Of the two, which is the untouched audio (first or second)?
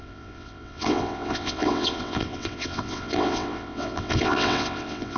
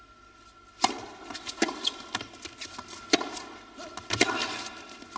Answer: second